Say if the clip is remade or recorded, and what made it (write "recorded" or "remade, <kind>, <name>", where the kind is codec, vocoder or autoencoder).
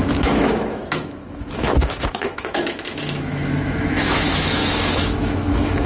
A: remade, autoencoder, DAC-VAE